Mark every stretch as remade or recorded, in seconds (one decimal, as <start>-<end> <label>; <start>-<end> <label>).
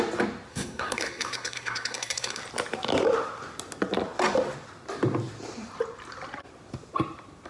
0.0-0.5 recorded; 0.5-2.4 remade; 2.4-7.5 recorded